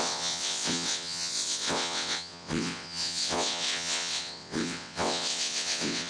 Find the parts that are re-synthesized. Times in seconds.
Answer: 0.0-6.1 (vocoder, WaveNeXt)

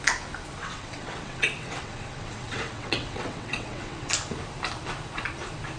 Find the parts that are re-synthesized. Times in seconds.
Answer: 0.6-4.1 (vocoder, WaveNeXt)

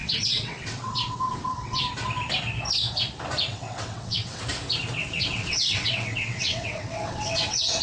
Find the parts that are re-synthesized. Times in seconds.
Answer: 0.0-1.8 (vocoder, WaveNeXt); 3.5-4.4; 5.0-7.8

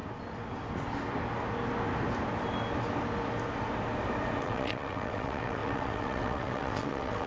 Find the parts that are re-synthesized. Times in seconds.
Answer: 4.4-7.3 (vocoder, WaveNeXt)

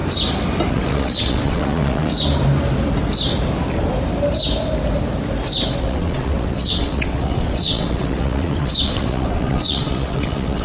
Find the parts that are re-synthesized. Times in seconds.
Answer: 0.7-2.1 (vocoder, WaveNeXt); 5.8-10.6

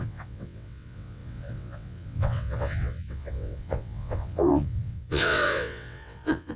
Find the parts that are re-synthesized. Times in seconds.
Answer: 0.0-6.6 (vocoder, WaveNeXt)

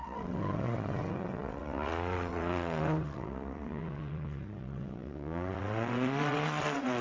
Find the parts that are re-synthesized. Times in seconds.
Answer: 0.0-7.0 (vocoder, WaveNeXt)

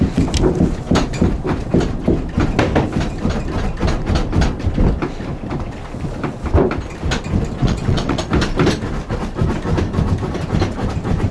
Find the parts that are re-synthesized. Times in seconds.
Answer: 7.6-8.2 (vocoder, WaveNeXt)